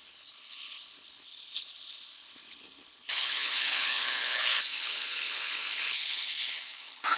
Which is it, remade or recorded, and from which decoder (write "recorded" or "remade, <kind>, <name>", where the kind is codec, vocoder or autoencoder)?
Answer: remade, codec, HILCodec